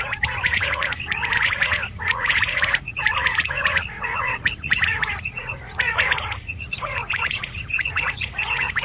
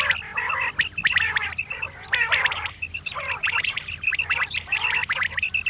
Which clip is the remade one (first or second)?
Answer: first